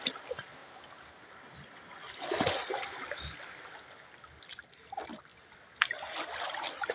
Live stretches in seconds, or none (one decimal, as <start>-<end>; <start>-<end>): 0.0-6.9